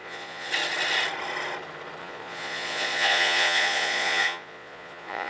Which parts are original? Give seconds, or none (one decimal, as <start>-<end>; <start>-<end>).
0.5-2.0